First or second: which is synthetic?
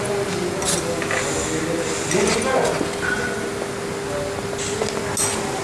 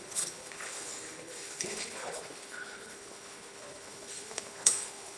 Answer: second